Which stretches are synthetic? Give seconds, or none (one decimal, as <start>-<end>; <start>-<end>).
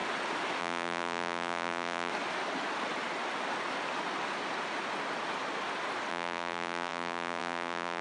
0.6-2.1; 6.1-8.0